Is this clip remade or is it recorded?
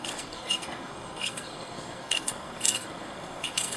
remade